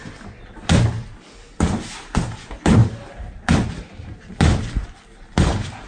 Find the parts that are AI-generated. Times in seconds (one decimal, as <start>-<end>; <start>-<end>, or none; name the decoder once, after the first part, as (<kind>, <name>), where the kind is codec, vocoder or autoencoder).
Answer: none